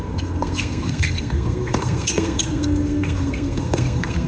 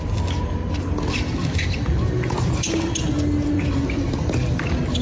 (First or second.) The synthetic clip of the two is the first